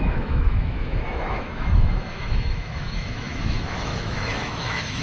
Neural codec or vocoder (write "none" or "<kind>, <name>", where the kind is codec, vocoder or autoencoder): autoencoder, DAC-VAE